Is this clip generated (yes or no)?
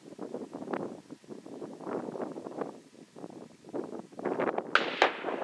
no